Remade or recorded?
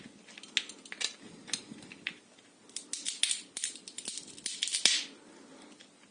recorded